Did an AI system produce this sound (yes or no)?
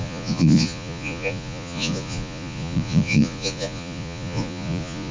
yes